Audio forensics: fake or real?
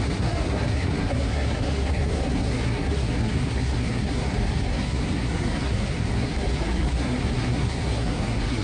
fake